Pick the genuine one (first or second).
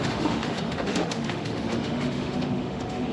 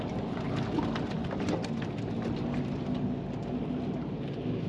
second